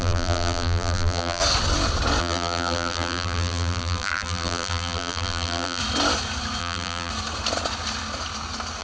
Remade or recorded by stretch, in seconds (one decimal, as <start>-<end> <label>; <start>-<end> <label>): 0.0-1.4 remade; 1.4-2.2 recorded; 2.2-5.8 remade; 5.8-6.6 recorded; 6.6-7.1 remade; 7.1-8.8 recorded